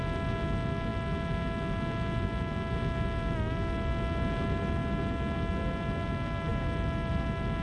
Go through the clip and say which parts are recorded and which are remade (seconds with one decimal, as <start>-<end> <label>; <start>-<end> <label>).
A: 0.0-7.6 recorded

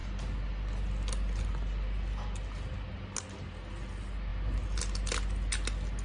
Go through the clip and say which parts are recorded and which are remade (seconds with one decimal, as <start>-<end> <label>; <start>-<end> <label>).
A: 0.0-6.0 recorded

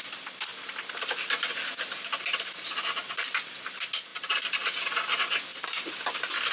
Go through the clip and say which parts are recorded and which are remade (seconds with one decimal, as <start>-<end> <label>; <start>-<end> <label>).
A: 0.0-4.1 recorded; 4.1-4.8 remade; 4.8-5.5 recorded; 5.5-6.0 remade; 6.0-6.5 recorded

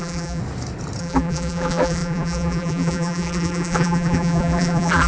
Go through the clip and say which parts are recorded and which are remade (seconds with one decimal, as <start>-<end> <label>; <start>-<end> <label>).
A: 0.0-0.4 remade; 0.4-1.0 recorded; 1.0-5.1 remade